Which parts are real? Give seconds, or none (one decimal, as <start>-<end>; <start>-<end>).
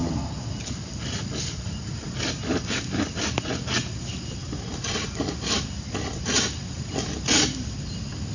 0.0-8.3